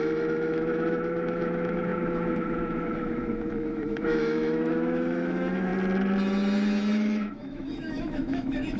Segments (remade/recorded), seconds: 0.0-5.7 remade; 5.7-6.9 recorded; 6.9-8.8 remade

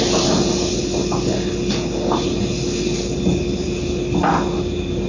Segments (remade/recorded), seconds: 0.0-5.1 recorded

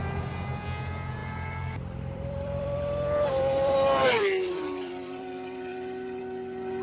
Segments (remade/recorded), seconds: 0.0-1.2 recorded; 1.2-5.2 remade; 5.2-6.8 recorded

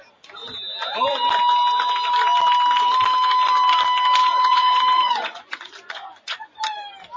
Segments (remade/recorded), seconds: 0.0-4.2 recorded; 4.2-6.6 remade; 6.6-7.2 recorded

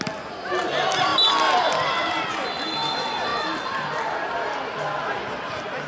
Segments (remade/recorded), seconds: 0.0-5.9 recorded

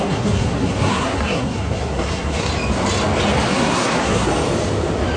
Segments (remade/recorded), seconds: 0.0-2.5 remade; 2.5-3.5 recorded; 3.5-4.3 remade; 4.3-5.2 recorded